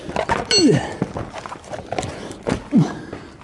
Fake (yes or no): no